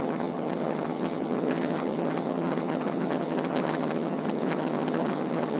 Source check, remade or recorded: remade